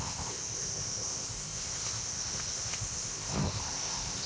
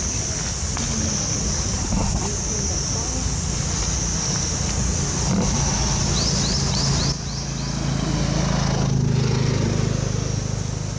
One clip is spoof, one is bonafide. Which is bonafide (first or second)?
second